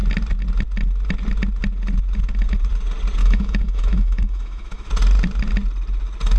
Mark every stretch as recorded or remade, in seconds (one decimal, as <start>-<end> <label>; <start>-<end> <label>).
0.0-3.2 recorded; 3.2-4.9 remade; 4.9-6.4 recorded